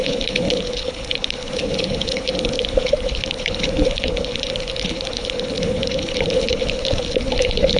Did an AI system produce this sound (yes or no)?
yes